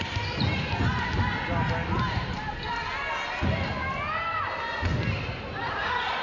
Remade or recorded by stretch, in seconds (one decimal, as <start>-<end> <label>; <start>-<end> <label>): 0.0-6.2 recorded